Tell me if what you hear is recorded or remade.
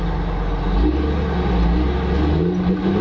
recorded